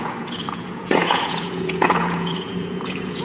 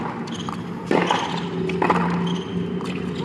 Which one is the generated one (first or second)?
first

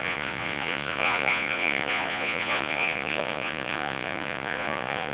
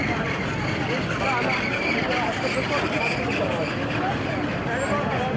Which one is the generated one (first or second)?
first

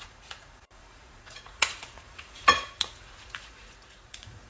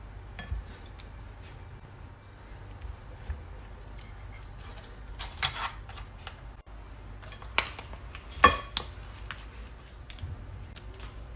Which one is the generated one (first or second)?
first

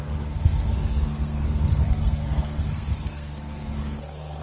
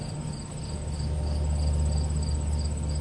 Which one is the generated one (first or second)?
first